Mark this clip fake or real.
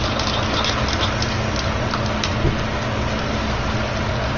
real